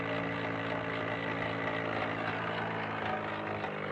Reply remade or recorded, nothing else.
recorded